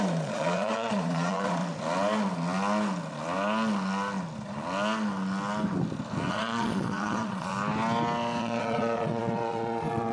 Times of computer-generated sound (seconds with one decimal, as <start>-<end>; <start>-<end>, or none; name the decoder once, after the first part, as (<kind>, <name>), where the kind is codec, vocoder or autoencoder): 0.0-1.6 (vocoder, Vocos); 6.3-7.5; 8.4-10.1